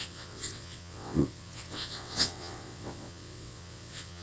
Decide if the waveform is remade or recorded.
remade